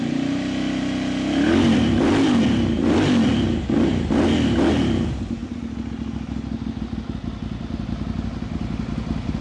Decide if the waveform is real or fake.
real